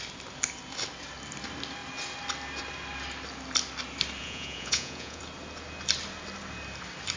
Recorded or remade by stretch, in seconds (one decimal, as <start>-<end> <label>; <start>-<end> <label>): 0.0-4.2 recorded; 4.2-5.2 remade; 5.2-7.2 recorded